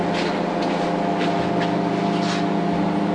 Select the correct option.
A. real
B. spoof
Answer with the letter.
A